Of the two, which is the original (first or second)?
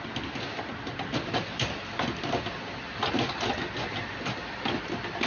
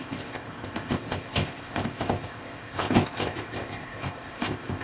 first